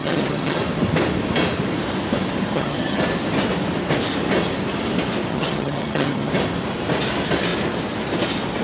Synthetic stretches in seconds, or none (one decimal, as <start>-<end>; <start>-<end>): 0.0-0.6; 2.5-3.0; 5.3-6.3